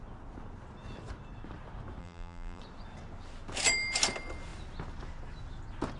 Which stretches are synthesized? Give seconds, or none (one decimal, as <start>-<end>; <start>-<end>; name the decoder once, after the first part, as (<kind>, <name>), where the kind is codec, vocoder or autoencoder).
2.0-2.6 (vocoder, BigVGAN v2)